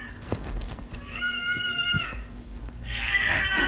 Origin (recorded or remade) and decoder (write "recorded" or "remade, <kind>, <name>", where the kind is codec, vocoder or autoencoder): remade, codec, SNAC